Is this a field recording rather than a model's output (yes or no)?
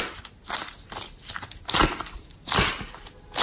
yes